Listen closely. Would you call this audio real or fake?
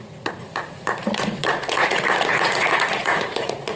fake